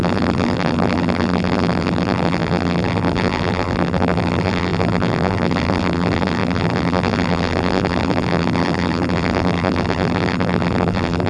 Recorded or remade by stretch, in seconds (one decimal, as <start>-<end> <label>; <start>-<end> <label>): 0.0-11.3 remade